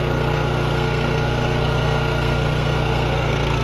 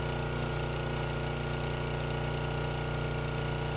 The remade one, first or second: first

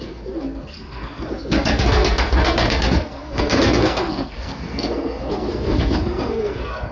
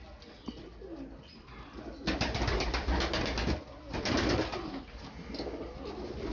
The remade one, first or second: first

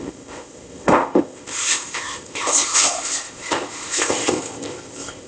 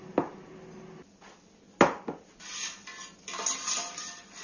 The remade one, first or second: first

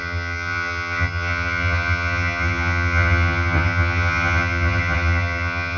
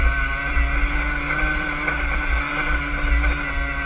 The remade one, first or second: first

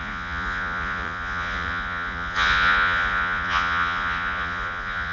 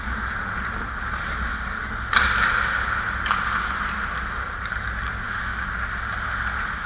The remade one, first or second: first